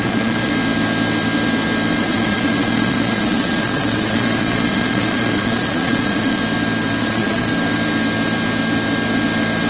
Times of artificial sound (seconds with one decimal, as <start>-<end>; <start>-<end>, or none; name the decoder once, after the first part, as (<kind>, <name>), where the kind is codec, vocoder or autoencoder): 0.0-0.5 (vocoder, Vocos); 2.0-6.4; 7.0-7.5